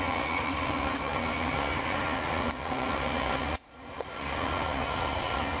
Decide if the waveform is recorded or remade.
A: remade